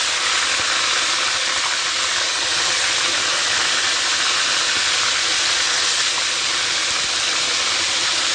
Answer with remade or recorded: recorded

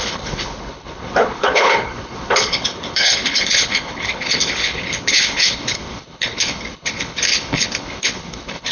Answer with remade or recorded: remade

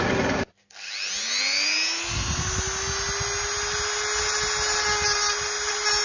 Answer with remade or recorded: recorded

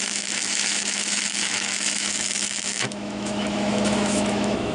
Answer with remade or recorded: remade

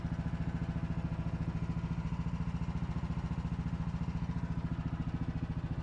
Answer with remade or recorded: recorded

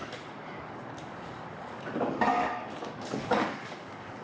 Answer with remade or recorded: remade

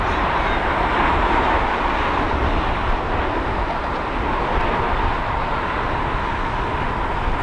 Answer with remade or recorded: recorded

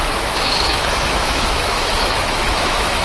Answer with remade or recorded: remade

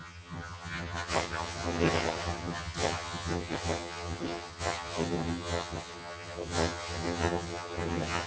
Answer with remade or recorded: remade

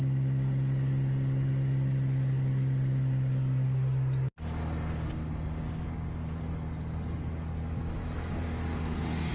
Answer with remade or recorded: recorded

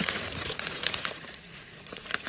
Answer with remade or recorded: remade